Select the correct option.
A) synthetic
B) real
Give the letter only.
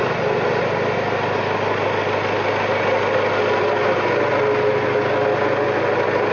B